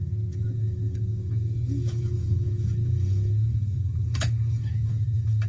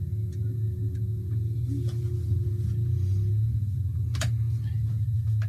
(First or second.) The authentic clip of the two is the second